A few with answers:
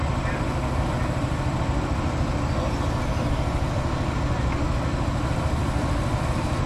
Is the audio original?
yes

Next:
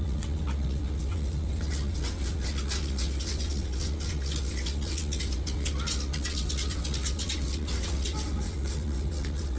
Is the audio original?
no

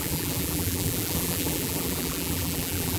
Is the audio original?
no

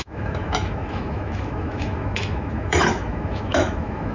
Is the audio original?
no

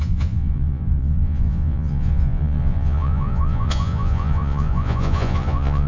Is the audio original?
no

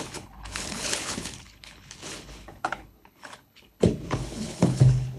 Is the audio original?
no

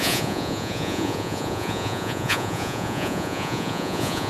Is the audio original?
no